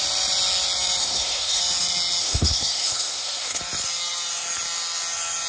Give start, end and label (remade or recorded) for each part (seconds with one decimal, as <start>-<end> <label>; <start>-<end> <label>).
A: 0.0-1.0 recorded; 1.0-1.6 remade; 1.6-2.2 recorded; 2.2-3.6 remade; 3.6-5.5 recorded